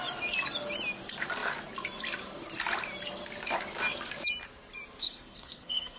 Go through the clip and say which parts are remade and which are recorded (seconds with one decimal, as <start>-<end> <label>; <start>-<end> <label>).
0.0-5.0 recorded; 5.0-6.0 remade